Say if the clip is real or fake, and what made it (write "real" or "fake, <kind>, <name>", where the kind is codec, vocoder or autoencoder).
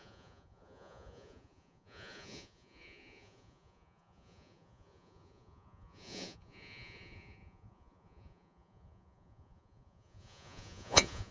fake, vocoder, Vocos